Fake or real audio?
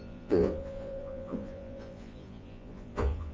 fake